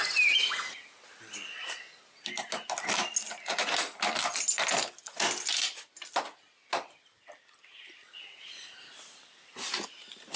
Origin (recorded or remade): recorded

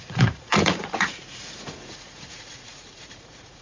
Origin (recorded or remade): remade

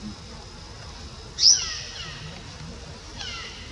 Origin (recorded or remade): recorded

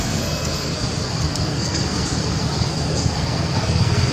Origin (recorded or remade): remade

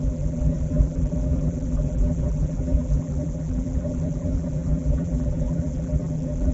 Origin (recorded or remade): remade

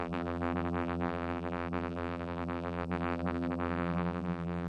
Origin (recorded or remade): remade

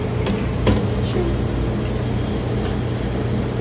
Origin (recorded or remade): recorded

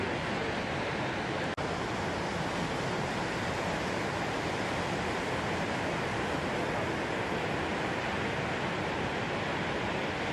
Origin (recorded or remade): recorded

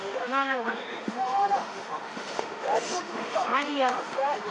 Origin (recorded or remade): remade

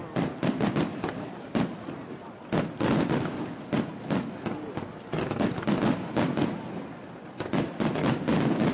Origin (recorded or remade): recorded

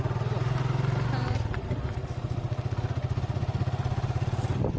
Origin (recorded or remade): recorded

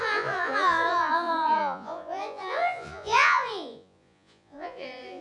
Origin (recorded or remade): remade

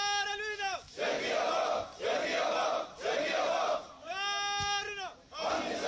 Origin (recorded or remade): recorded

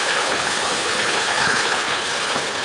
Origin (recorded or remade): remade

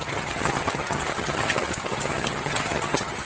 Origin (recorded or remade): remade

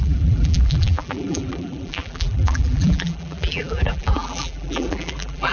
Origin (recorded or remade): remade